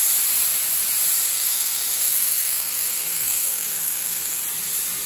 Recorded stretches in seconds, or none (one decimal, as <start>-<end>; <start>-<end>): 0.0-1.3; 4.4-5.1